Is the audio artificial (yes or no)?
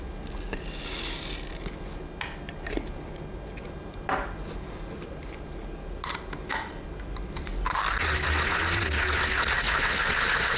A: no